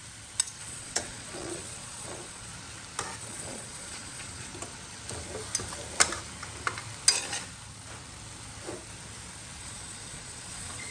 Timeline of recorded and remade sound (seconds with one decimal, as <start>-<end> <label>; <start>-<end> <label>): 0.0-0.6 recorded; 0.6-2.5 remade; 2.5-3.2 recorded; 3.2-4.5 remade; 4.5-9.6 recorded; 9.6-10.9 remade